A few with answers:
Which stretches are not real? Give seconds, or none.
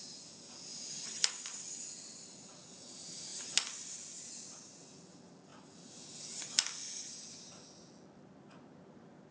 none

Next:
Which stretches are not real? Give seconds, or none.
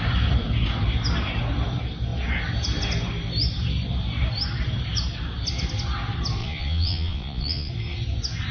6.4-7.7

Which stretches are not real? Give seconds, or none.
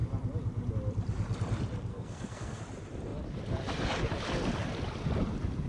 1.9-2.6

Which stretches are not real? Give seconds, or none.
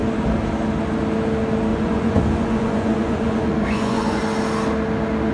1.7-4.2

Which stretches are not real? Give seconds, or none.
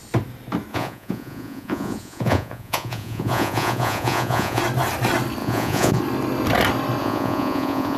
0.7-4.6; 5.4-6.0; 7.0-8.0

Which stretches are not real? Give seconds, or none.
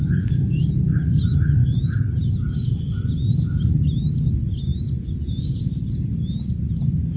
1.6-2.2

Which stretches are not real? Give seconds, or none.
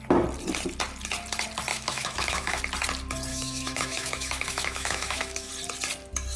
1.7-2.6; 3.3-5.5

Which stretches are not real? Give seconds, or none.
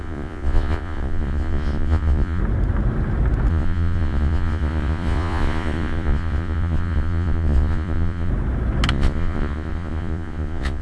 0.0-2.4; 3.5-8.3; 8.9-10.8